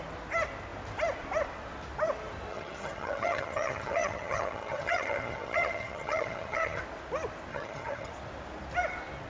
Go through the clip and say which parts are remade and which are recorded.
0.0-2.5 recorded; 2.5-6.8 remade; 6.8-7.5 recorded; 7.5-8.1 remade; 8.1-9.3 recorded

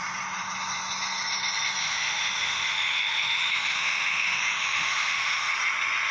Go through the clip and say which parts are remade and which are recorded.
0.0-1.8 recorded; 1.8-5.5 remade; 5.5-6.1 recorded

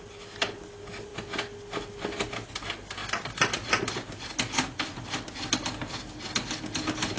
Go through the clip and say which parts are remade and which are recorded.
0.0-7.2 recorded

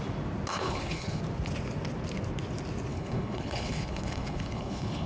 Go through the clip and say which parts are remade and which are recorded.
0.0-0.5 recorded; 0.5-1.2 remade; 1.2-2.9 recorded; 2.9-5.1 remade